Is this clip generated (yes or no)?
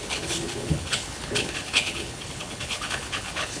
yes